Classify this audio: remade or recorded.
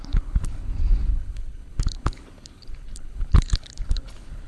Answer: remade